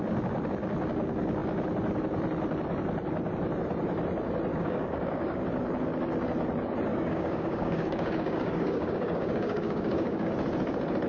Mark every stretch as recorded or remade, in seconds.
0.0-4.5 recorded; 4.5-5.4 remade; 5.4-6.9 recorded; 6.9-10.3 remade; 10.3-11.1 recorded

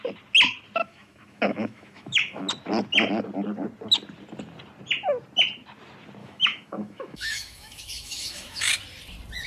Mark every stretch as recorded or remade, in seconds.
0.0-0.8 recorded; 0.8-2.5 remade; 2.5-6.2 recorded; 6.2-8.7 remade; 8.7-9.5 recorded

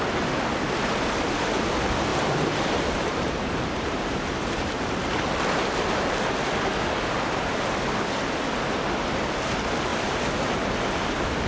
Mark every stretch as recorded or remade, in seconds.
0.0-2.1 recorded; 2.1-5.0 remade; 5.0-9.9 recorded; 9.9-10.7 remade; 10.7-11.5 recorded